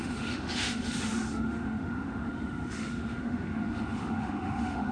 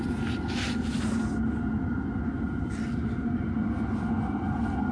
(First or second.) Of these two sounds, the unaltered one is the second